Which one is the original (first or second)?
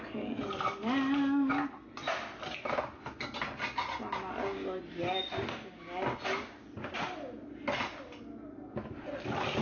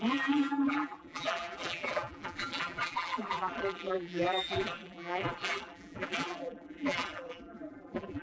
first